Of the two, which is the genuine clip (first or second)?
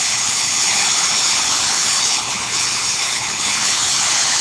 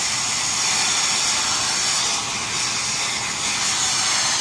second